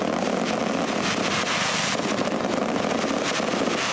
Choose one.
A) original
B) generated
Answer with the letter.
A